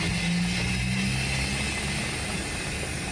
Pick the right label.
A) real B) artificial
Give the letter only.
A